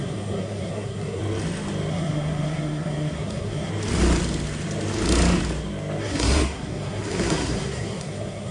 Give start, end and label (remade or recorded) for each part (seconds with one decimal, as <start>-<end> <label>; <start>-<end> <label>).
0.0-1.2 remade; 1.2-1.9 recorded; 1.9-3.7 remade; 3.7-6.0 recorded; 6.0-8.5 remade